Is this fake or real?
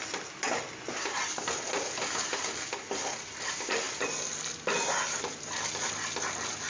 real